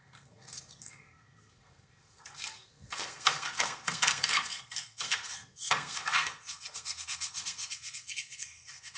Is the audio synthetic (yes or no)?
yes